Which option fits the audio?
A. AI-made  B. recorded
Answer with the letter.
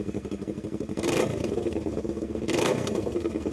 A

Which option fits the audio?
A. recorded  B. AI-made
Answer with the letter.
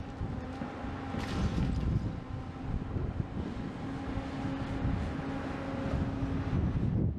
A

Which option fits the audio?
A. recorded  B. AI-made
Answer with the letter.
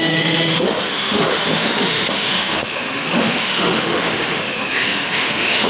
B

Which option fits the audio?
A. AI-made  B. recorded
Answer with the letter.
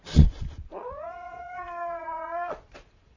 A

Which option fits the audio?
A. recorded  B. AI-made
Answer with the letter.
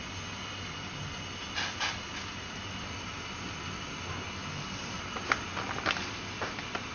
A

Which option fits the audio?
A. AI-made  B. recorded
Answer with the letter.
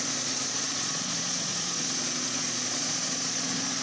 A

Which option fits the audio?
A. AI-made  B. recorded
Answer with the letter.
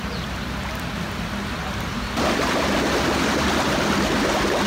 B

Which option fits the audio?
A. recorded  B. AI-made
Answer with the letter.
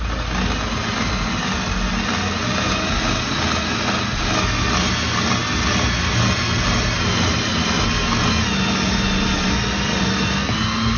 A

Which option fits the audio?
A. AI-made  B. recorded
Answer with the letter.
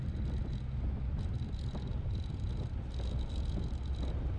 B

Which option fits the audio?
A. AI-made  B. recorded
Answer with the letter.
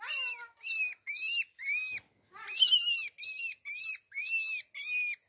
B